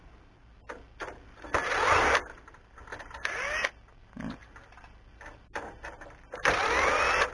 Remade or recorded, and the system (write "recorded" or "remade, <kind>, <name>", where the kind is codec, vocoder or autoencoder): recorded